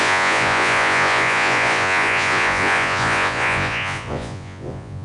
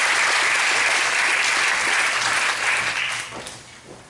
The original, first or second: second